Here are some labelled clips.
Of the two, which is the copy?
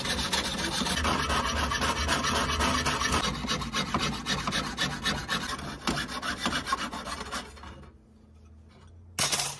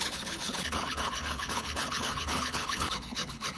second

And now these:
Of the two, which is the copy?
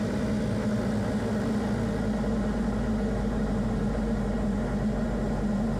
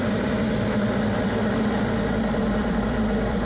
second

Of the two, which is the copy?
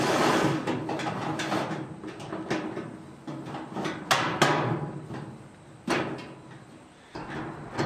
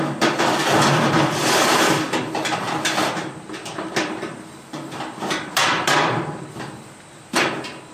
second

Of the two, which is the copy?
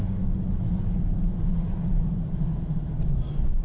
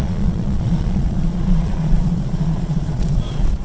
second